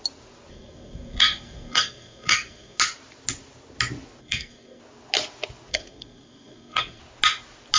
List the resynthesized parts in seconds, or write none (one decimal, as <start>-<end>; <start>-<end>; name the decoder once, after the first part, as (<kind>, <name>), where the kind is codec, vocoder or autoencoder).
0.5-2.8 (codec, SNAC); 4.2-4.8; 5.7-7.0